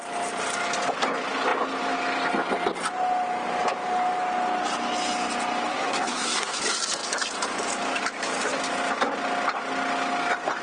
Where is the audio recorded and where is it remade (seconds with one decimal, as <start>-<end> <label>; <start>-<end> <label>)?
0.0-5.7 recorded; 5.7-6.6 remade; 6.6-10.6 recorded